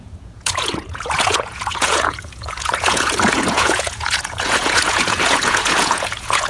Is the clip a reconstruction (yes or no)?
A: yes